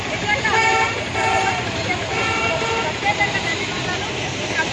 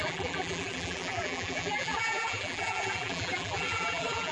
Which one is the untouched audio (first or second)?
first